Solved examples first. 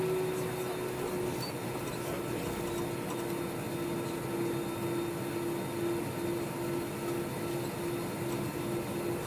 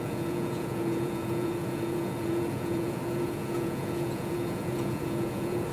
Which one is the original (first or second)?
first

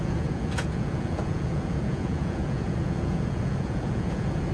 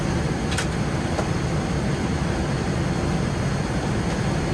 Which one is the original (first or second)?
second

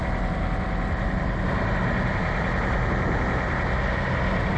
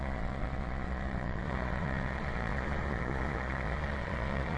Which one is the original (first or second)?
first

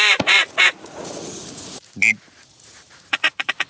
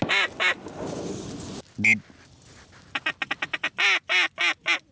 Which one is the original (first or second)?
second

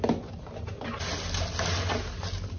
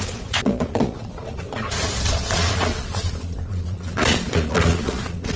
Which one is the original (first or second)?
first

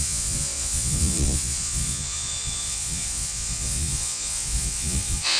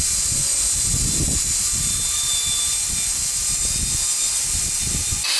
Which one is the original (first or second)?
second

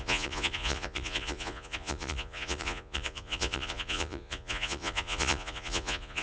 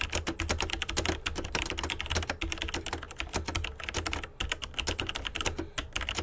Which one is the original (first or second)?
second